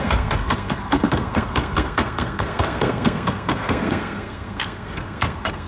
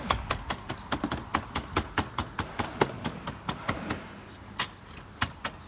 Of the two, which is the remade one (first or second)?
first